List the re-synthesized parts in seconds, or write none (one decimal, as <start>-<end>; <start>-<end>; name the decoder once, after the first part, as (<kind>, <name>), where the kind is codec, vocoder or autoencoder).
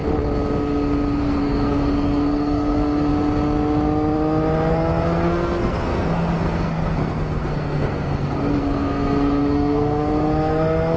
1.2-3.1 (codec, SNAC); 4.7-11.0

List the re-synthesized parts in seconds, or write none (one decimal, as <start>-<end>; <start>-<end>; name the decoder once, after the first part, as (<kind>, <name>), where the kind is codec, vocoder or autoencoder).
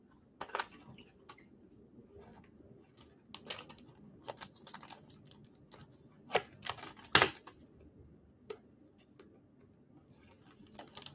none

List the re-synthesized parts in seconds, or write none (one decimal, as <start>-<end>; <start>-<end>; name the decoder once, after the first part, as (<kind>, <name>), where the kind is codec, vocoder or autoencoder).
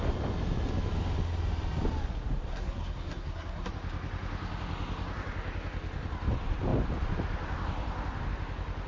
2.5-3.7 (codec, SNAC)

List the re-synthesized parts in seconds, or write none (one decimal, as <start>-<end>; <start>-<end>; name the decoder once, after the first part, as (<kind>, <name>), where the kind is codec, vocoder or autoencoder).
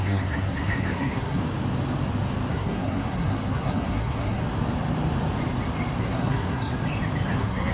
0.0-1.4 (codec, SNAC); 2.5-4.4; 6.0-6.7; 7.3-7.7